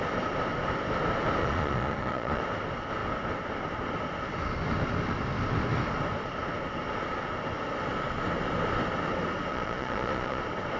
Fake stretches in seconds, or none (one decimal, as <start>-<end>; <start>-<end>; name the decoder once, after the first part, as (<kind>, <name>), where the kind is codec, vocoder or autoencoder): 1.4-2.4 (vocoder, Vocos); 9.5-10.4

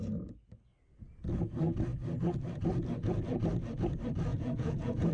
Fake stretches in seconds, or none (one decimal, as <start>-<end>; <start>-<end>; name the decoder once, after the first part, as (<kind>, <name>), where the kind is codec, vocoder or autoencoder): 4.3-5.1 (vocoder, Vocos)

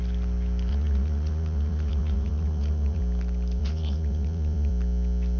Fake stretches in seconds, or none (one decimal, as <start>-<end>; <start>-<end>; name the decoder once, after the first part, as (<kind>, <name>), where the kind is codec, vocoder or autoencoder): 0.7-3.0 (vocoder, Vocos); 3.6-4.7

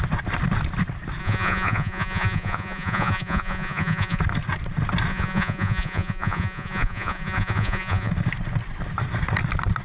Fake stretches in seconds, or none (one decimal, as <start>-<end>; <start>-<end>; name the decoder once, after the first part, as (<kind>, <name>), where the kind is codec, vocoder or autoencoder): 1.2-4.2 (vocoder, Vocos); 5.1-8.1

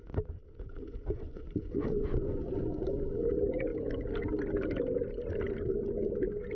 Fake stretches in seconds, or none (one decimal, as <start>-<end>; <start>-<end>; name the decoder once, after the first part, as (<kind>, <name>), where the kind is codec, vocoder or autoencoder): 0.5-3.1 (vocoder, Vocos)

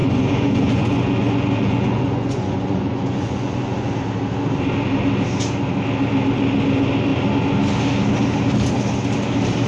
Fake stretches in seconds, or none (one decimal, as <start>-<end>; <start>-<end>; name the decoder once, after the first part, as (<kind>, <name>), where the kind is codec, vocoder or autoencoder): 0.0-3.9 (vocoder, Vocos)